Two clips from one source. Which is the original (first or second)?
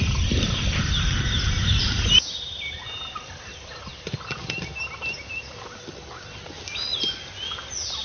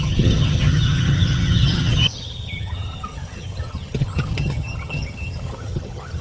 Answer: first